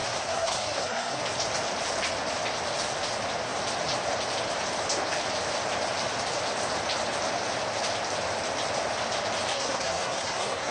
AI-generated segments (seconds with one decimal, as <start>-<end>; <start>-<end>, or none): 0.0-1.2; 9.5-10.7

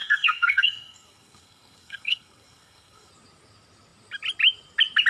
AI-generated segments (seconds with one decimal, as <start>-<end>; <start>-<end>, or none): 0.0-3.1

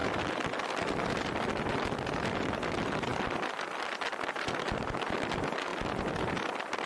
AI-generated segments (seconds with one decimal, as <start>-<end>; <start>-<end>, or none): none